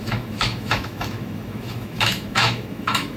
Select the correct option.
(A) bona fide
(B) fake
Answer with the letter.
B